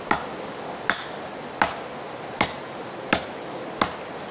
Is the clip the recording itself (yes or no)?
yes